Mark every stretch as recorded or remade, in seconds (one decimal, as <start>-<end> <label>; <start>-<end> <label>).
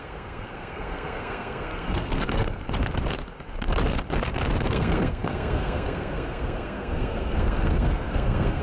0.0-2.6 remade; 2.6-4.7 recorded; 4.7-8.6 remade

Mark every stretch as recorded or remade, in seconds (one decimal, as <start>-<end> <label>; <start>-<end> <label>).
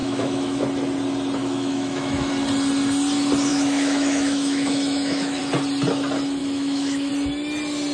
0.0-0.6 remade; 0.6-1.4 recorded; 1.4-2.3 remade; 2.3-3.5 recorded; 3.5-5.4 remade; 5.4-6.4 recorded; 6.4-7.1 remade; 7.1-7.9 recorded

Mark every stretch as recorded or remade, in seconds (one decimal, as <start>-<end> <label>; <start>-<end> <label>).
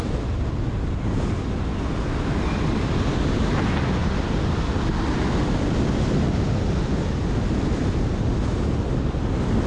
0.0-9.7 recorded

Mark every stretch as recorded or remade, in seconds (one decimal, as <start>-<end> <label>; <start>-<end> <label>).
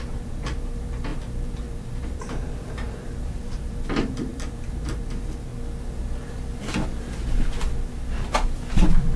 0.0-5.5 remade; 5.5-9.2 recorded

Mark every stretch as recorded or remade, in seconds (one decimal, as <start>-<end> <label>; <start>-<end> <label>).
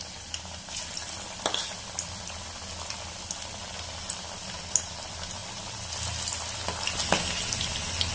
0.0-5.4 recorded; 5.4-6.2 remade; 6.2-8.1 recorded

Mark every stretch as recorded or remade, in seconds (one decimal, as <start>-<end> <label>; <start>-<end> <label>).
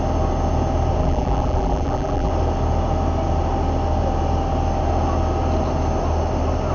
0.0-1.0 recorded; 1.0-2.3 remade; 2.3-6.7 recorded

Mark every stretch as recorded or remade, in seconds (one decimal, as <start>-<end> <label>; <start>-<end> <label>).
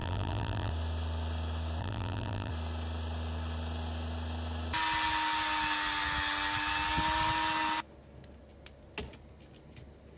0.0-0.7 remade; 0.7-1.8 recorded; 1.8-2.5 remade; 2.5-10.2 recorded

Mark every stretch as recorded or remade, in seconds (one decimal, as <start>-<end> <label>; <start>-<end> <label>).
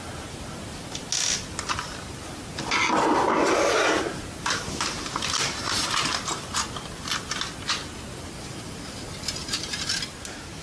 0.0-3.4 recorded; 3.4-6.5 remade; 6.5-9.4 recorded; 9.4-10.0 remade; 10.0-10.6 recorded